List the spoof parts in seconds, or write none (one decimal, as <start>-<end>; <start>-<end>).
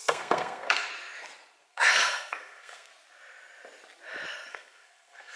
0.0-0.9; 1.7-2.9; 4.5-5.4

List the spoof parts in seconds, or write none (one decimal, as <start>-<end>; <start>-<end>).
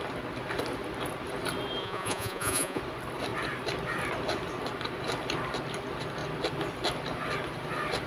1.8-2.8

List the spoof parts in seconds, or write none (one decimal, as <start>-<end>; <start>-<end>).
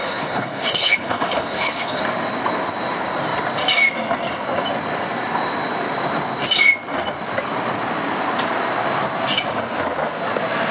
0.0-2.0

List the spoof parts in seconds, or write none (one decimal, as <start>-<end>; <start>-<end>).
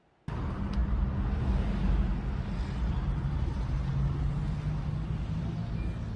none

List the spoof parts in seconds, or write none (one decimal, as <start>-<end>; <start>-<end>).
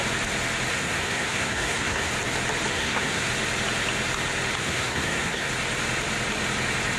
0.7-2.1; 2.7-3.3; 4.6-5.5